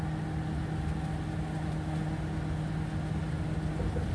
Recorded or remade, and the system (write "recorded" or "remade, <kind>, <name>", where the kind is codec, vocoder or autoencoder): recorded